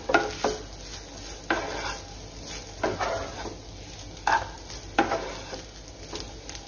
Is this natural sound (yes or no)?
yes